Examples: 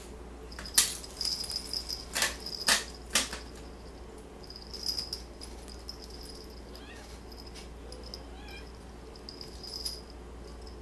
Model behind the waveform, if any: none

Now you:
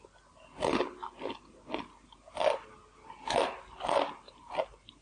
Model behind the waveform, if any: none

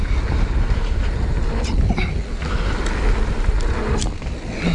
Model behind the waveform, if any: none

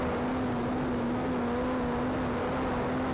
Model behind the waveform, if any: none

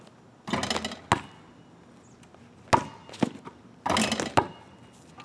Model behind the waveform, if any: none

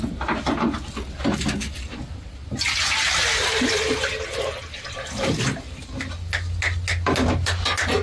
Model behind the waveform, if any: none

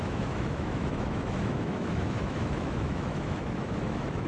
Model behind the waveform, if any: autoencoder, DAC-VAE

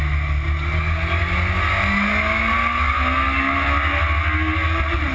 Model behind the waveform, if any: none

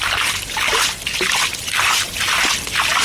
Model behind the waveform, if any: none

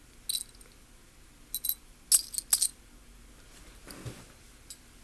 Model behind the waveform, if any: none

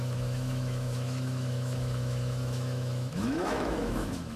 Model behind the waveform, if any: autoencoder, DAC-VAE